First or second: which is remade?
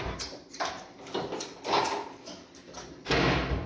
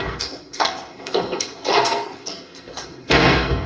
second